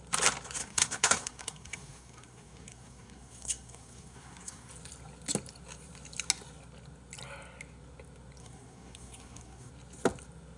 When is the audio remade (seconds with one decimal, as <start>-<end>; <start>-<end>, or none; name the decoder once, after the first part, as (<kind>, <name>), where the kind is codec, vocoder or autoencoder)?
0.6-4.7 (codec, SNAC); 8.4-9.7